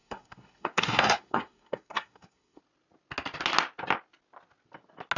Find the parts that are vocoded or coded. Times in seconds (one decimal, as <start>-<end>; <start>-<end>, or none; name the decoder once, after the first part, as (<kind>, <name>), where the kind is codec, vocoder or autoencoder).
0.0-2.6 (codec, SNAC)